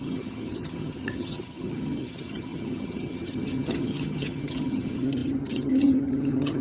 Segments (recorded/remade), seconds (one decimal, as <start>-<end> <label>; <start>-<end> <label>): 0.0-6.6 remade